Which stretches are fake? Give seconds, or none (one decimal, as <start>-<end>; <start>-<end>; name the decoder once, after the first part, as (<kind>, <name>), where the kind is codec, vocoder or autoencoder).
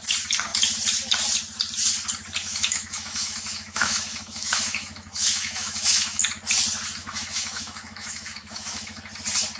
2.4-6.2 (autoencoder, DAC-VAE); 7.0-9.0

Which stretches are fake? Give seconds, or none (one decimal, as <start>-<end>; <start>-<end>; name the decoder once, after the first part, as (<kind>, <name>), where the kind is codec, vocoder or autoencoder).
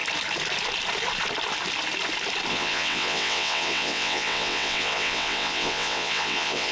2.5-6.7 (vocoder, WaveNeXt)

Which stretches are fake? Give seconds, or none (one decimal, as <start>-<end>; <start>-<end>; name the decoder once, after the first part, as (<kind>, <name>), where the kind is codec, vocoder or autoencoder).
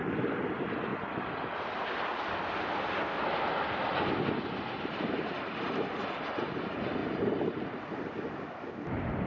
0.9-2.4 (vocoder, BigVGAN v2); 7.0-7.6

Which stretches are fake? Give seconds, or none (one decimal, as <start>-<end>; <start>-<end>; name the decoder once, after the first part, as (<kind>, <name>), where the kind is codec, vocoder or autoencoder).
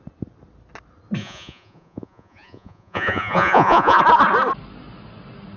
1.2-4.0 (vocoder, Vocos)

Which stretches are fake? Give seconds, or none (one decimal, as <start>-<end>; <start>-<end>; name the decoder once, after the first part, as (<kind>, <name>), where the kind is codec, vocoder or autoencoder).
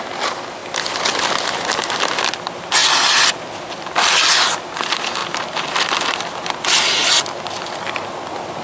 0.6-1.3 (vocoder, BigVGAN v2); 2.8-3.8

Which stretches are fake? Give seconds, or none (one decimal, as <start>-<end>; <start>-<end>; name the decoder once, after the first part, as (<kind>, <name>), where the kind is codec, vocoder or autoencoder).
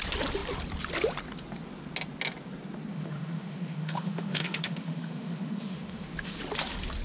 2.9-6.4 (autoencoder, DAC-VAE)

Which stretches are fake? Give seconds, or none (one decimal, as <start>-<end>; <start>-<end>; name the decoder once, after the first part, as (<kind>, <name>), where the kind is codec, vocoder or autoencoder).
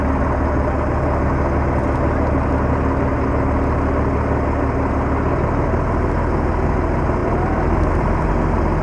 7.2-8.3 (vocoder, BigVGAN v2)